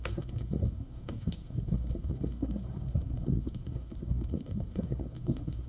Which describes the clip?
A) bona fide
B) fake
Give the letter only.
B